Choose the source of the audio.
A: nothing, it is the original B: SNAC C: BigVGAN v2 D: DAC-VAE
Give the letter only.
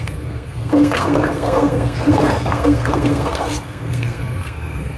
B